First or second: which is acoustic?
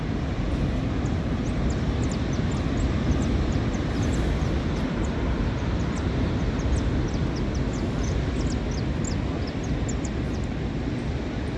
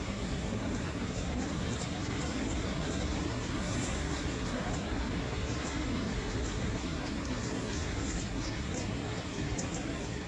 first